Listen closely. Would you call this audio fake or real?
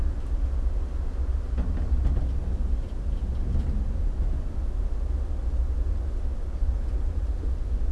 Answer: real